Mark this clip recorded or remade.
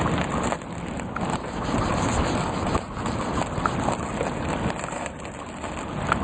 recorded